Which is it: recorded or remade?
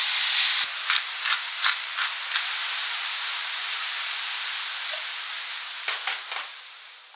recorded